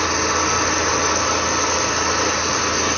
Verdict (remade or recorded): recorded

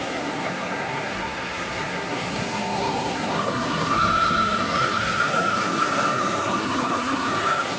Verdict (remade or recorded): remade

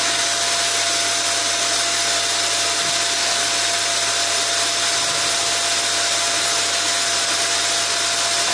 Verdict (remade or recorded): recorded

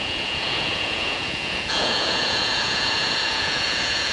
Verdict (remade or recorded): remade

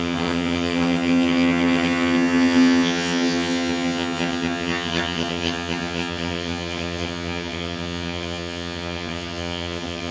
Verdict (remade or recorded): remade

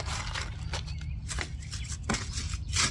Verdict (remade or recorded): recorded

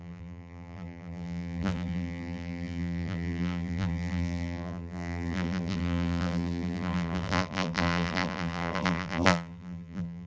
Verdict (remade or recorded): remade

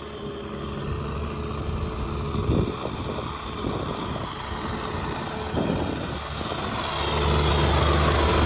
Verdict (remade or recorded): recorded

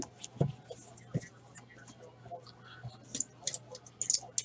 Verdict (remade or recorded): recorded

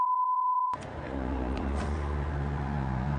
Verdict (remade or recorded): remade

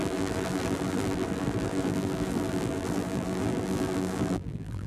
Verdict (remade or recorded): remade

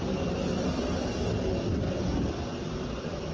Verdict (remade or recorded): recorded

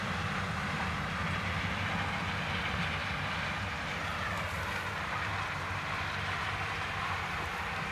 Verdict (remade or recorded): recorded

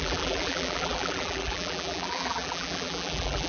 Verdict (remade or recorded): remade